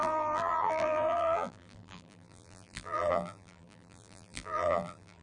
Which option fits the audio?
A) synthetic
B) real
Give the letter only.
A